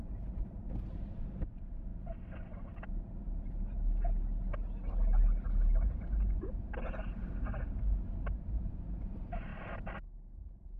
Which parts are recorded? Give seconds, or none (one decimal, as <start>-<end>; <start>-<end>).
0.0-10.8